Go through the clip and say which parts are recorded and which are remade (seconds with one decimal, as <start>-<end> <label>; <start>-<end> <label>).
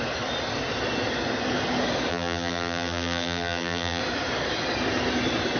0.0-2.1 recorded; 2.1-4.0 remade; 4.0-5.6 recorded